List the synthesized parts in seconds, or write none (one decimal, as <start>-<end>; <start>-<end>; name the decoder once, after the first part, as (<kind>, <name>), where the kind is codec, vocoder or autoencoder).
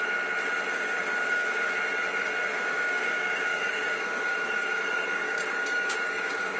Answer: 0.7-1.7 (codec, DAC); 2.5-6.6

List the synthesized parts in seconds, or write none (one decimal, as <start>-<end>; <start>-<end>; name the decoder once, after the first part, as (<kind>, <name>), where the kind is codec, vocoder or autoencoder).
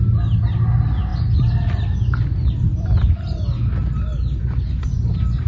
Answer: none